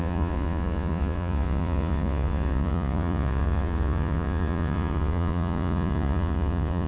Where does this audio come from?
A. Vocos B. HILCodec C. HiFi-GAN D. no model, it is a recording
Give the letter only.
A